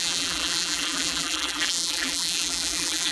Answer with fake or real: fake